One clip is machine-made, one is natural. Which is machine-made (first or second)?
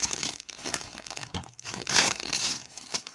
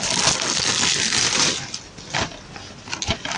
first